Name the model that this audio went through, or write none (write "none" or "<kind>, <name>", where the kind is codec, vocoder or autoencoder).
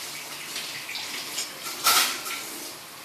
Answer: none